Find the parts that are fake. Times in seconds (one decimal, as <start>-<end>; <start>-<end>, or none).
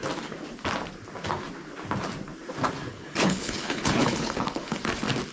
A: 2.9-4.8